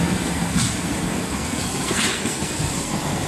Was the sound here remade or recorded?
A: remade